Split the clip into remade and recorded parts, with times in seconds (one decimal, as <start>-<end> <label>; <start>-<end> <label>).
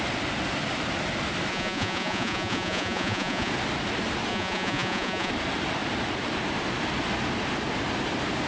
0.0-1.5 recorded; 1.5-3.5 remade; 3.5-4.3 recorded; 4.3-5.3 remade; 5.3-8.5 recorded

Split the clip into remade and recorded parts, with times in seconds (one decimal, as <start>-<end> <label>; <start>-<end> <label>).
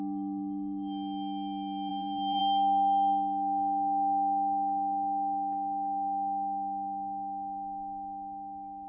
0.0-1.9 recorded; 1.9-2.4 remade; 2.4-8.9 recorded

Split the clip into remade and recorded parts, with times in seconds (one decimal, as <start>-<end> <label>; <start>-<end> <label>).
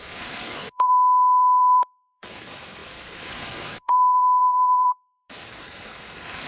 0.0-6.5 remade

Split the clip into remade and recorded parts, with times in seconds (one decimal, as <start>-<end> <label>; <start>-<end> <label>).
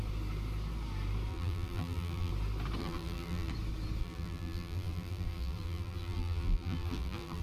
0.0-1.3 recorded; 1.3-2.3 remade; 2.3-2.8 recorded; 2.8-3.5 remade; 3.5-4.0 recorded; 4.0-7.4 remade